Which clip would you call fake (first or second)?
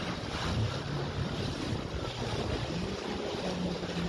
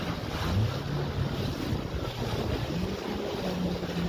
first